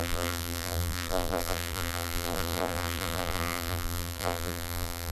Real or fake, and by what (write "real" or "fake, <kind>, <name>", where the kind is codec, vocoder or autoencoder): fake, vocoder, BigVGAN v2